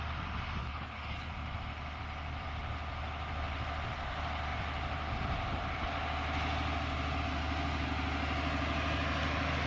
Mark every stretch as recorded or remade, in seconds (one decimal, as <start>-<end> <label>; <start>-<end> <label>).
0.0-0.6 recorded; 0.6-1.3 remade; 1.3-9.7 recorded